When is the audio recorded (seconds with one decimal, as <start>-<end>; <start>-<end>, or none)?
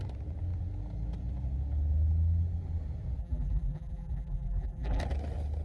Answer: 0.0-3.2; 5.0-5.6